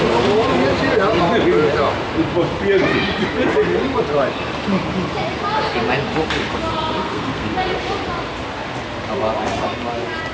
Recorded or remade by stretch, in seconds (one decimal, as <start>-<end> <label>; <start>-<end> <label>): 0.0-6.7 recorded; 6.7-7.6 remade; 7.6-10.3 recorded